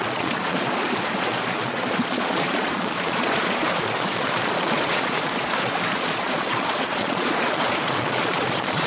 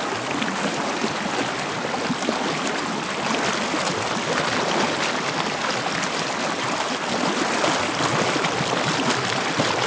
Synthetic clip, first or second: first